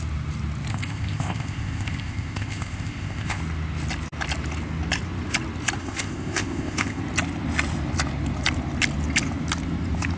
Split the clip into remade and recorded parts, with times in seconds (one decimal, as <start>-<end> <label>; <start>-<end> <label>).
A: 0.0-0.7 recorded; 0.7-3.4 remade; 3.4-5.8 recorded; 5.8-7.0 remade; 7.0-10.2 recorded